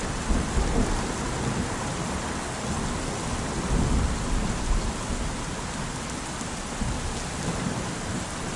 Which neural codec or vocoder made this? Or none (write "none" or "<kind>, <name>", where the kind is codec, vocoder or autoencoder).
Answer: none